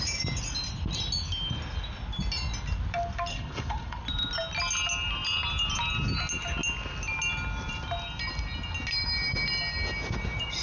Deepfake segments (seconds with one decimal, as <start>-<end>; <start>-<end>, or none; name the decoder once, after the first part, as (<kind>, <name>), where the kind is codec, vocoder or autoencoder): 3.3-4.0 (codec, HILCodec)